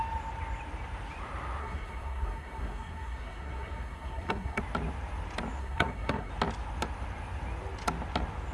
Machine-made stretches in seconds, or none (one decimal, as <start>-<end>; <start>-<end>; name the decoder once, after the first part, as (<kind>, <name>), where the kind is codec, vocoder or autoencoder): 1.6-4.6 (codec, SNAC); 5.6-6.3